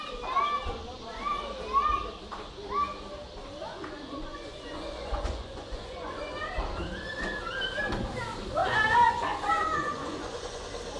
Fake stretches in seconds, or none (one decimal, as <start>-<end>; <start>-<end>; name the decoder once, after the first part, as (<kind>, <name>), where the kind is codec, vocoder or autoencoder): 3.7-6.3 (vocoder, Vocos); 8.6-10.6